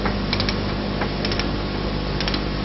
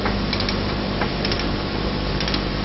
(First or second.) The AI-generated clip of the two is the second